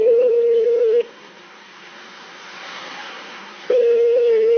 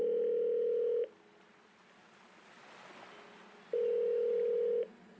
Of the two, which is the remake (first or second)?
first